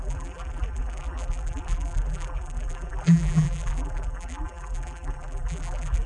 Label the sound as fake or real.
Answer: fake